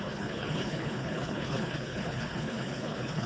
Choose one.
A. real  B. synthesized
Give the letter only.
B